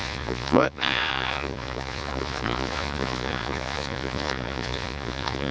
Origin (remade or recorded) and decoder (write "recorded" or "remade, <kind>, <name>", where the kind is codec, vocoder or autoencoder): remade, vocoder, Vocos